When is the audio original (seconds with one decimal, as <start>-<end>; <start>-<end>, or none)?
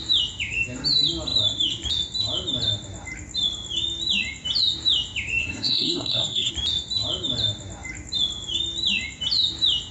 0.0-5.4; 6.5-9.9